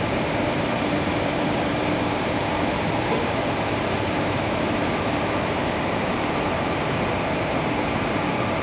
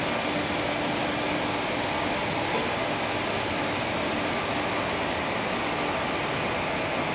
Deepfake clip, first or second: first